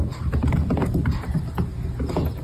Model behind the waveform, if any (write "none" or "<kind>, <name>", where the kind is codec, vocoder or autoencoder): none